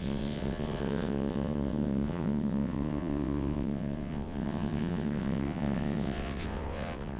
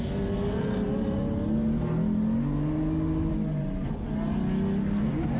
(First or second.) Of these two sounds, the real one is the second